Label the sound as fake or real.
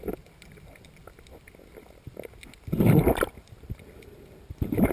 real